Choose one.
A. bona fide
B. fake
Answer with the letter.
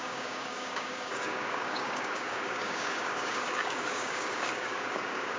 B